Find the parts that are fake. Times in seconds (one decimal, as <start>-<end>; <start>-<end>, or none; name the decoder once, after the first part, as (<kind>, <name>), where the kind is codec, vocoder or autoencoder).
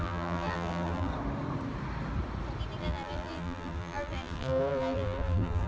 0.0-1.1 (vocoder, BigVGAN v2); 2.8-5.7